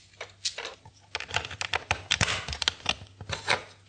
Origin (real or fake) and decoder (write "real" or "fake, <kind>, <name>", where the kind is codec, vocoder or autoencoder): real